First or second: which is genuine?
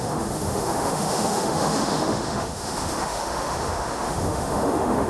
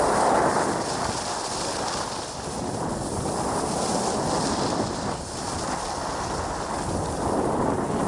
second